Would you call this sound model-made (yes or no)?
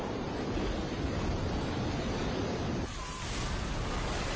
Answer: no